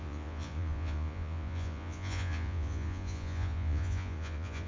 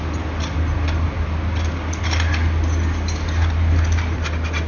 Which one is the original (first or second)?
second